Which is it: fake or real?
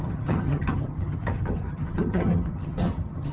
fake